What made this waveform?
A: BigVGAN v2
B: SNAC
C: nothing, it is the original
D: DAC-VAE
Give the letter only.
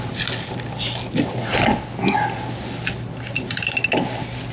C